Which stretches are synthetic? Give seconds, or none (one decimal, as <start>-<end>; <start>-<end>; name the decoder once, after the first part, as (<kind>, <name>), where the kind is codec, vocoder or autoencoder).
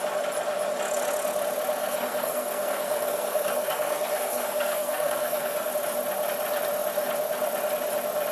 1.8-5.7 (codec, SNAC)